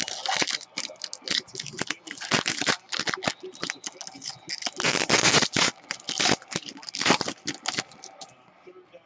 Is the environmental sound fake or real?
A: real